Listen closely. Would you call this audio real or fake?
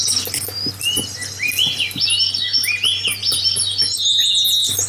real